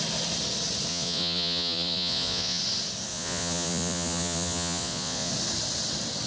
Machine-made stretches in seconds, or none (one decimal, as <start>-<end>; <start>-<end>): 0.9-2.6; 3.1-5.3